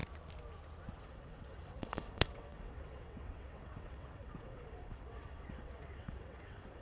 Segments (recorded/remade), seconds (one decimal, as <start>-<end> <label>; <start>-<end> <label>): 0.0-1.0 recorded; 1.0-6.8 remade